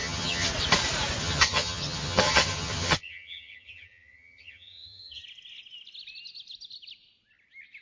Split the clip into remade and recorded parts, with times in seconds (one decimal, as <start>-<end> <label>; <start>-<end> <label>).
0.0-0.5 remade; 0.5-1.2 recorded; 1.2-5.2 remade; 5.2-7.8 recorded